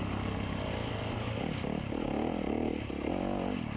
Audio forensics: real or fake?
real